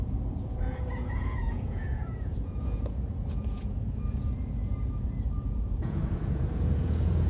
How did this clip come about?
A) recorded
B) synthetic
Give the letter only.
B